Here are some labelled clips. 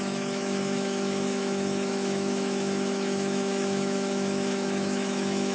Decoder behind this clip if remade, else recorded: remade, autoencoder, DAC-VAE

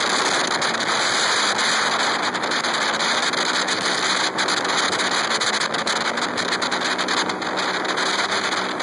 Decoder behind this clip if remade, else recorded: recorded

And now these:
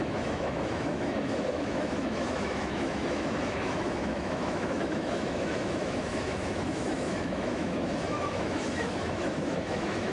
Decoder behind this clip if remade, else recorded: remade, autoencoder, DAC-VAE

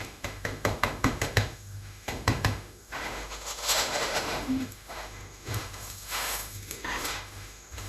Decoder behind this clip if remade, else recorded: remade, autoencoder, DAC-VAE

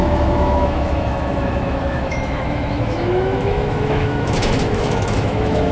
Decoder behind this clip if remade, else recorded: remade, autoencoder, DAC-VAE